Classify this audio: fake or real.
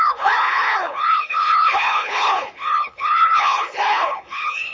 fake